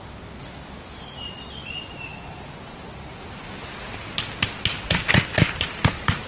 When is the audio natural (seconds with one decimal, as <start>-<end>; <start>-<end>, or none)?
0.0-6.3